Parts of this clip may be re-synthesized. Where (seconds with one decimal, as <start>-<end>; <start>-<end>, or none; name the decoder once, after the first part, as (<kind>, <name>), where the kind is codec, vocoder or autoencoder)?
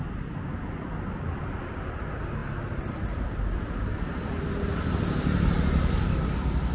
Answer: none